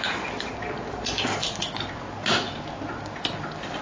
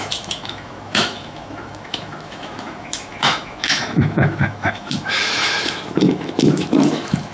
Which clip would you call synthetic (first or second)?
second